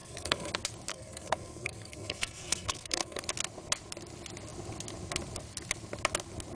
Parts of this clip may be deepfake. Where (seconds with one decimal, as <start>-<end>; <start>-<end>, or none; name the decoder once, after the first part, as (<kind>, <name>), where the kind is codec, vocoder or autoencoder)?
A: 0.0-0.5 (codec, SNAC); 0.9-3.2

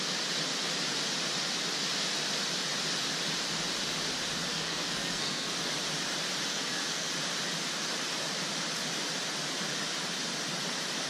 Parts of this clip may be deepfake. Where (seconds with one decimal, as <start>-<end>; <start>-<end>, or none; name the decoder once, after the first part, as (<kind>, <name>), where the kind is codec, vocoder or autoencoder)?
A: 4.5-5.5 (codec, SNAC); 6.5-7.1

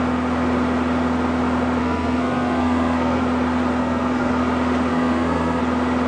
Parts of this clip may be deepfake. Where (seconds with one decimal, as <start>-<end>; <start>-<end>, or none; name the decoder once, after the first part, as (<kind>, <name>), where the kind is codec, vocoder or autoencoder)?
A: 1.8-3.2 (codec, SNAC); 3.8-4.4; 4.9-5.6

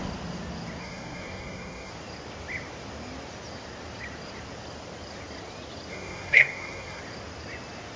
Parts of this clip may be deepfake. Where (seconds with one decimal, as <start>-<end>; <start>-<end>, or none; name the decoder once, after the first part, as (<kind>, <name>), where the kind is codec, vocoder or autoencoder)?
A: 0.8-1.9 (codec, SNAC); 5.9-7.0

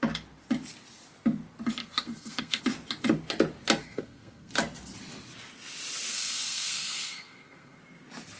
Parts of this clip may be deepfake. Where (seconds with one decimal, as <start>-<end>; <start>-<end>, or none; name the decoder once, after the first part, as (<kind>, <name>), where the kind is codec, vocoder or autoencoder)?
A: 1.8-2.6 (codec, SNAC); 3.8-4.5; 6.1-7.8

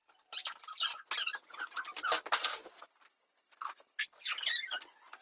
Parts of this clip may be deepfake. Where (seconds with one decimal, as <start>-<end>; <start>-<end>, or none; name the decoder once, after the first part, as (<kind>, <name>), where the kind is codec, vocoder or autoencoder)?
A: none

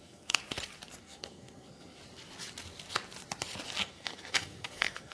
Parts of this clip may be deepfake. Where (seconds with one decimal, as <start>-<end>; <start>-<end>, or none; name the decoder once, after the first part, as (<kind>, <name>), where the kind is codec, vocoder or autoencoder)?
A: 0.0-0.4 (codec, SNAC); 1.0-2.0; 3.8-5.1